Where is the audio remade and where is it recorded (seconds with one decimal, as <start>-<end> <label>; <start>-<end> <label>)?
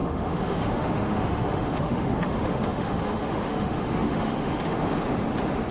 0.0-4.9 remade; 4.9-5.7 recorded